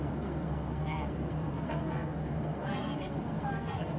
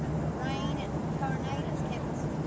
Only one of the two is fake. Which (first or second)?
first